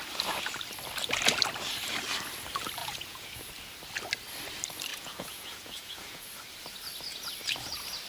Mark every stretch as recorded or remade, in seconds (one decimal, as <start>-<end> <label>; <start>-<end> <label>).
0.0-2.8 recorded; 2.8-3.5 remade; 3.5-4.9 recorded; 4.9-6.3 remade; 6.3-8.1 recorded